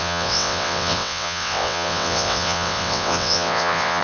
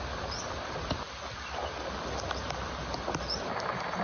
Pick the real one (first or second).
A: second